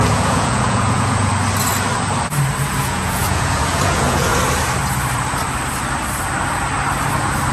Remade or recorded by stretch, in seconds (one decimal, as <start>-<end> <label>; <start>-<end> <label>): 0.0-1.3 remade; 1.3-2.8 recorded; 2.8-4.3 remade; 4.3-7.5 recorded